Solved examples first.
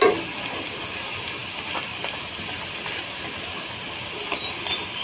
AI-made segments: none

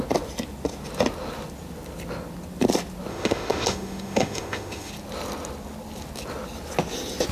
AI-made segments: 3.1-4.9 (autoencoder, DAC-VAE)

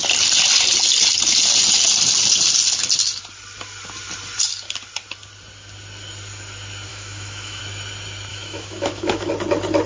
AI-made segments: 6.9-7.6 (autoencoder, DAC-VAE); 8.3-9.3

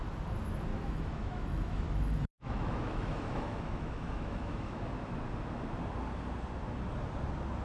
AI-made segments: 0.7-4.8 (autoencoder, DAC-VAE)

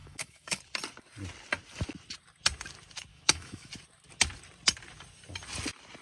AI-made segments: 0.0-0.6 (autoencoder, DAC-VAE); 3.1-3.7

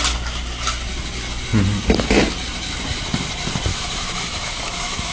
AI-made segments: 3.7-5.1 (autoencoder, DAC-VAE)

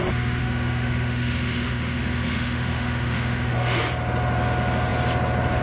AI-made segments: 0.4-3.8 (autoencoder, DAC-VAE)

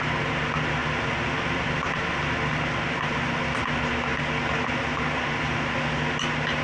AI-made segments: none